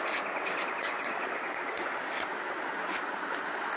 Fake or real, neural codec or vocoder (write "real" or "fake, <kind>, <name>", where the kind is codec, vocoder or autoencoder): real